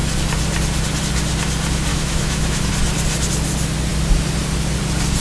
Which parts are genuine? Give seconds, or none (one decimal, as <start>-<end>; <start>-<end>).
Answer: 0.0-1.9; 2.7-5.2